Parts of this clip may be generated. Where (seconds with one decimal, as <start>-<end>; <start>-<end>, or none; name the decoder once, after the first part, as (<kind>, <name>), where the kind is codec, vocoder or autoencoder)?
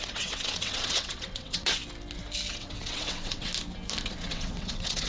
0.0-1.8 (vocoder, WaveNeXt); 2.5-3.5; 4.1-5.1